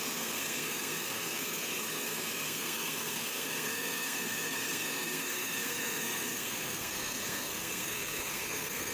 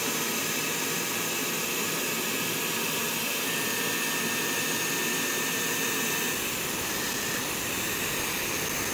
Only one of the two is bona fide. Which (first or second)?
second